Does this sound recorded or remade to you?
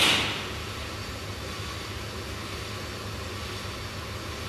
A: recorded